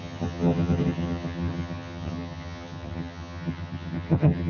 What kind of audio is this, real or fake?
fake